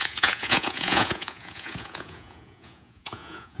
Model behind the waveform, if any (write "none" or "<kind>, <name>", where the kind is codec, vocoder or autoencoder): vocoder, Vocos